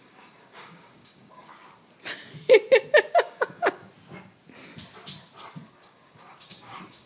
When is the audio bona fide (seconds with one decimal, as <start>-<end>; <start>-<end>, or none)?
1.5-3.1; 3.8-5.7